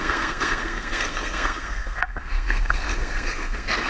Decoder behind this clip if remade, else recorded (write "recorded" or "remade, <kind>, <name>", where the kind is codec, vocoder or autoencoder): remade, codec, SNAC